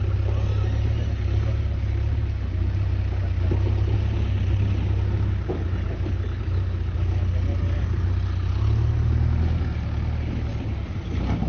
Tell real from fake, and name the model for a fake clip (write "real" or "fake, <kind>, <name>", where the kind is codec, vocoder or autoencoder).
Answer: real